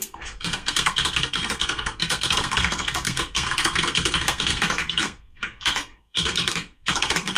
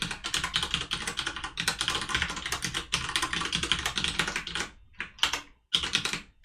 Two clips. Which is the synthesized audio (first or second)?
first